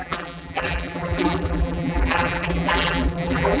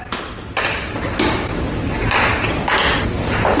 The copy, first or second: first